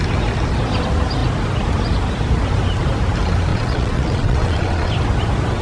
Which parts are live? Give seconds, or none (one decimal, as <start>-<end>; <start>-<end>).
0.0-3.5; 4.9-5.6